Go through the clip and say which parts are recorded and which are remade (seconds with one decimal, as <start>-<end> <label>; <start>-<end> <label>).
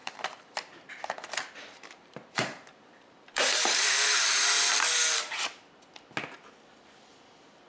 0.0-1.0 remade; 1.0-1.7 recorded; 1.7-4.7 remade; 4.7-7.7 recorded